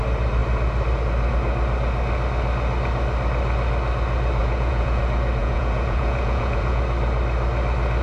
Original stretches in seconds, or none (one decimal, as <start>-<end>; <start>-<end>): 0.0-4.4; 5.0-5.4; 6.8-8.0